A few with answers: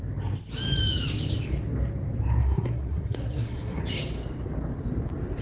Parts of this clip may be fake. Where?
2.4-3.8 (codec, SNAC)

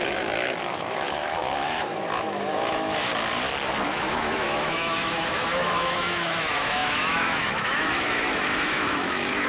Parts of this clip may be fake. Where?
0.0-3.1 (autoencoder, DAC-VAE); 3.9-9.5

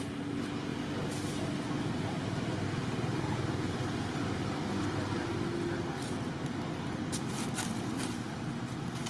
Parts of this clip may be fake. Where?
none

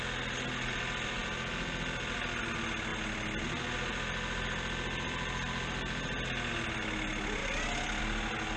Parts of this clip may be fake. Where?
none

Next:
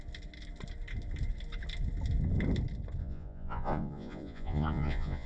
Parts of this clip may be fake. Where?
3.0-5.3 (vocoder, Vocos)

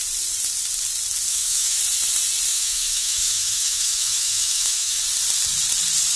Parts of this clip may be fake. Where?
1.3-1.8 (autoencoder, DAC-VAE); 2.5-5.0

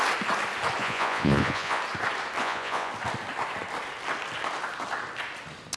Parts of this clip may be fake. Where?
0.8-1.8 (vocoder, Vocos); 2.4-2.9